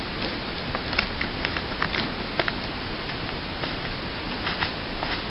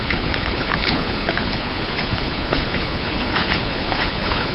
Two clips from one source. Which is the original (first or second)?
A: first